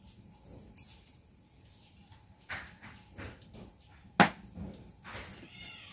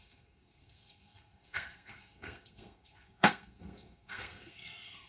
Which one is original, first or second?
first